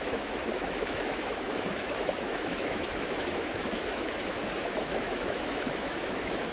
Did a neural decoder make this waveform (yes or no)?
yes